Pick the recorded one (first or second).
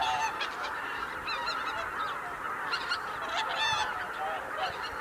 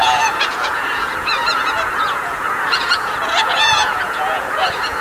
first